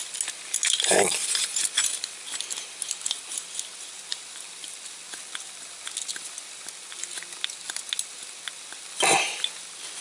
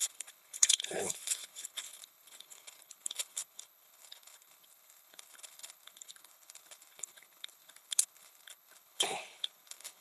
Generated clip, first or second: second